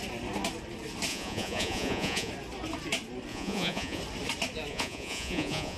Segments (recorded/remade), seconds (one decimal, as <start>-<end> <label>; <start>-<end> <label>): 0.0-1.1 recorded; 1.1-2.3 remade; 2.3-3.3 recorded; 3.3-4.0 remade; 4.0-4.7 recorded; 4.7-5.8 remade